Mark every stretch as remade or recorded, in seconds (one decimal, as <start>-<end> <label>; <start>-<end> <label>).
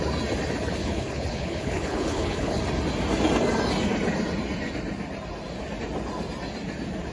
0.0-0.8 recorded; 0.8-2.6 remade; 2.6-7.1 recorded